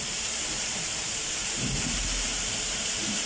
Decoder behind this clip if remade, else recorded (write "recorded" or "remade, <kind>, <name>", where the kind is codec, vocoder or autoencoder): remade, vocoder, BigVGAN v2